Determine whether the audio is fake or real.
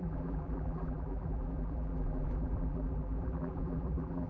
fake